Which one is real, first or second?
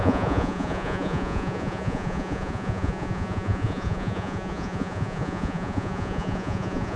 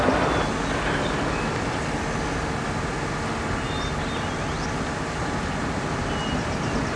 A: second